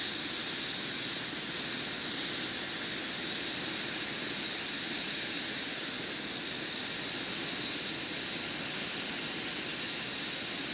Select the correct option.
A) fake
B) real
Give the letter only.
B